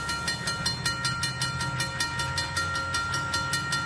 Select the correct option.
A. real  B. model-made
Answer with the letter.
A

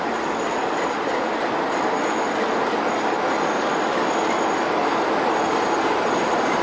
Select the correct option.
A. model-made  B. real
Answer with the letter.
B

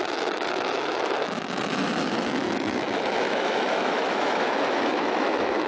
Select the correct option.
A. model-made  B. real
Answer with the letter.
A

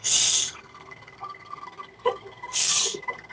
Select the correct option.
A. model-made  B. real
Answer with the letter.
A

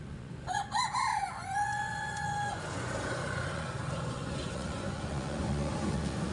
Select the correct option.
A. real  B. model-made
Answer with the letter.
B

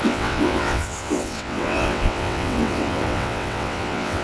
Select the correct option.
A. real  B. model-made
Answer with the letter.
B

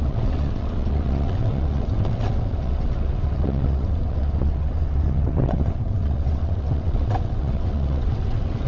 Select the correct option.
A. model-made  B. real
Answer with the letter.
A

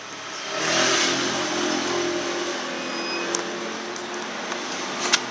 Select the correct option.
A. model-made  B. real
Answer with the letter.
B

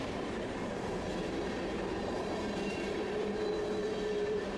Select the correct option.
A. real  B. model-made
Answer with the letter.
B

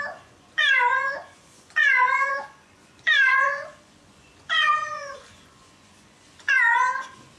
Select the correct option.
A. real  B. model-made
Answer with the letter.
B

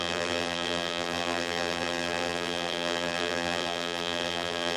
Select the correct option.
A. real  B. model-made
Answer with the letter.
B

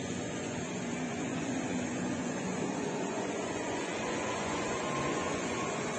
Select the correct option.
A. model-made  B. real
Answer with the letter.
A